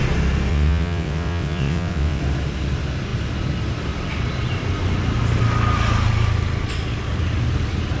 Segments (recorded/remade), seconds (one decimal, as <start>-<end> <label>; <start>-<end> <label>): 0.0-0.5 recorded; 0.5-2.2 remade; 2.2-8.0 recorded